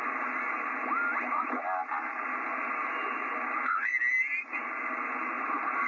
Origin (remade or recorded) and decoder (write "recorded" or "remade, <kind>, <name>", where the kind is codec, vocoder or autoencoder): recorded